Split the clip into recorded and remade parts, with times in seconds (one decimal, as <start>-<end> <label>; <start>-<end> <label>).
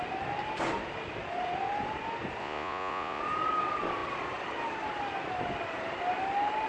0.0-2.4 recorded; 2.4-3.2 remade; 3.2-6.7 recorded